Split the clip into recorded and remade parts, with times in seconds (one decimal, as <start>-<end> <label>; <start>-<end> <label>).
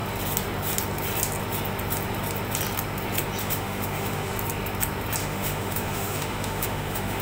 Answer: 0.0-3.4 recorded; 3.4-4.3 remade; 4.3-5.2 recorded; 5.2-7.2 remade